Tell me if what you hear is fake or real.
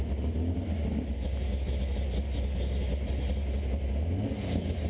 real